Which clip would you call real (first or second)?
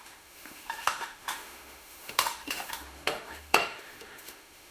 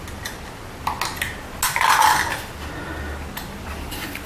second